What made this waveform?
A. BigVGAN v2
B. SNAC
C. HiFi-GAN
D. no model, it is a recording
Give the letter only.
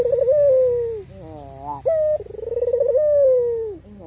D